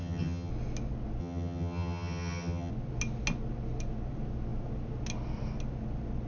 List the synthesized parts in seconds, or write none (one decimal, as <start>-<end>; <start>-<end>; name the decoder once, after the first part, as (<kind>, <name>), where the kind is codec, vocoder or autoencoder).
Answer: 0.0-0.5 (vocoder, HiFi-GAN); 1.2-2.7